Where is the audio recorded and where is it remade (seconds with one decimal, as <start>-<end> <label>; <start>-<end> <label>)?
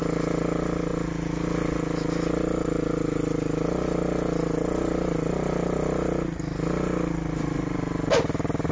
0.0-8.7 recorded